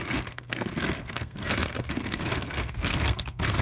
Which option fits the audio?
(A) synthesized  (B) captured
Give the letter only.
A